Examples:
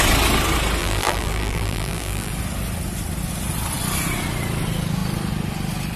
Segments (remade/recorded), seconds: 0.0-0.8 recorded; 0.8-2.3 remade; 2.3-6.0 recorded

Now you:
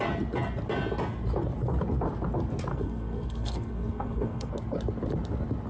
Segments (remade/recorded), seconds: 0.0-2.7 recorded; 2.7-4.5 remade; 4.5-5.7 recorded

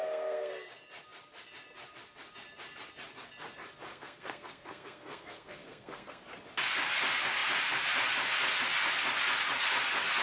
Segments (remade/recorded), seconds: 0.0-0.5 remade; 0.5-3.9 recorded; 3.9-6.2 remade; 6.2-10.2 recorded

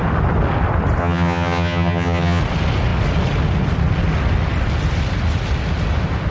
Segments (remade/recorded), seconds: 0.0-1.0 recorded; 1.0-2.4 remade; 2.4-6.3 recorded

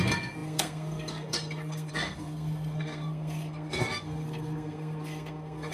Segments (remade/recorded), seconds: 0.0-5.7 remade

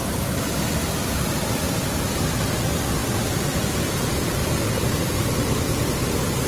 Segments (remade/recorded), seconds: 0.0-3.0 remade; 3.0-3.7 recorded; 3.7-6.5 remade

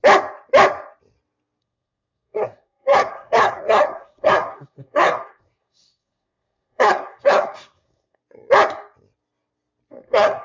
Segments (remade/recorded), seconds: 0.0-1.6 recorded; 1.6-8.2 remade; 8.2-9.9 recorded; 9.9-10.4 remade

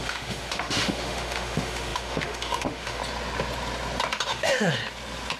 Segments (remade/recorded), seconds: 0.0-3.0 remade; 3.0-4.3 recorded; 4.3-4.8 remade; 4.8-5.4 recorded